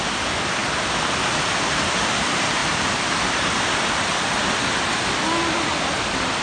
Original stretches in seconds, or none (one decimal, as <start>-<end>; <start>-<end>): 0.0-6.4